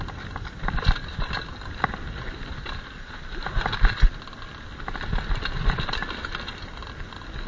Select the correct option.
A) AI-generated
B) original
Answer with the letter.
B